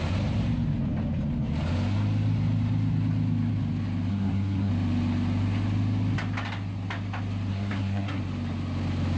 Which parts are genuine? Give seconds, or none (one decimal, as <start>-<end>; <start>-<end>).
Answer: 0.0-4.1; 4.7-7.5; 8.2-9.2